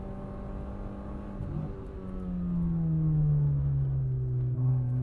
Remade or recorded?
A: recorded